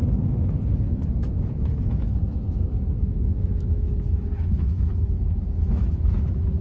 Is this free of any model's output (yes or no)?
no